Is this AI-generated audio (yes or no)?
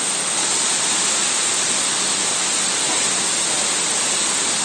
no